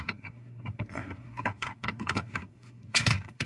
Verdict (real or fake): fake